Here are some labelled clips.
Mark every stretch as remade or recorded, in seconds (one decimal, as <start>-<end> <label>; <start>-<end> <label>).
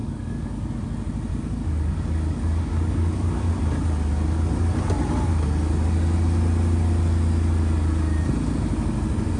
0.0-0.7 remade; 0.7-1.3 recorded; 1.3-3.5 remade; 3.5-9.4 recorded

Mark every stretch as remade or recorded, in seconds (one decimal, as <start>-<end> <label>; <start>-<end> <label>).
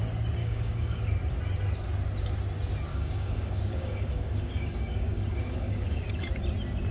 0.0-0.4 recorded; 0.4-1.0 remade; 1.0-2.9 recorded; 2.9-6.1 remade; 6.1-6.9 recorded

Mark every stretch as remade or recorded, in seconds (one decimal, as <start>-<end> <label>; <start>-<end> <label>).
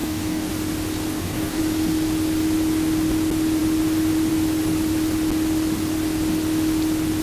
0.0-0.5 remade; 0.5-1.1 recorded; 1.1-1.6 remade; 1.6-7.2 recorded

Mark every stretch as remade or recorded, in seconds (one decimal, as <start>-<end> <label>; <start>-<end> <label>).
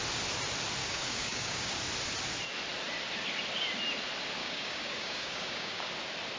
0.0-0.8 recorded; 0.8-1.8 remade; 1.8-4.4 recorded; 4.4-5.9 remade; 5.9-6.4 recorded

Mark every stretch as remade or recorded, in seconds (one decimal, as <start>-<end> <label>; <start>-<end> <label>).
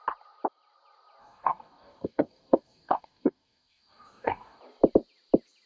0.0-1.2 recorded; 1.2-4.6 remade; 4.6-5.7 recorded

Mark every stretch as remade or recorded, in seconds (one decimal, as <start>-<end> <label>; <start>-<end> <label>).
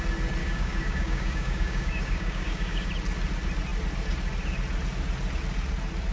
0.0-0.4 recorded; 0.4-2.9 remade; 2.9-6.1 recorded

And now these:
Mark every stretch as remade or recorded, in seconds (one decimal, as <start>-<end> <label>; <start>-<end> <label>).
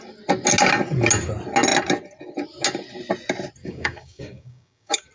0.0-3.6 recorded; 3.6-5.1 remade